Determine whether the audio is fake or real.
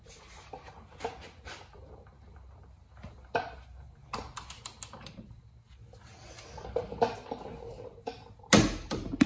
real